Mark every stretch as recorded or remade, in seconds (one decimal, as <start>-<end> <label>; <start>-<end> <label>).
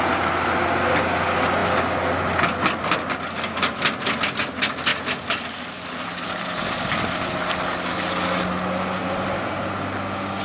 0.0-10.4 recorded